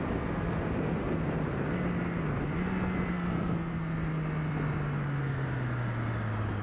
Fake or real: real